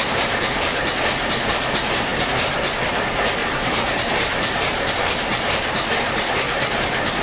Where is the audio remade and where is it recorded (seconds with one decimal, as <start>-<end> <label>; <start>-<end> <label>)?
0.0-0.8 remade; 0.8-3.4 recorded; 3.4-5.9 remade; 5.9-7.2 recorded